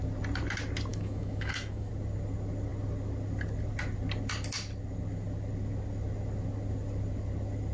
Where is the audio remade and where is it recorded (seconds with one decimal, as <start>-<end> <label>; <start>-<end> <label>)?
0.0-0.9 recorded; 0.9-1.9 remade; 1.9-7.7 recorded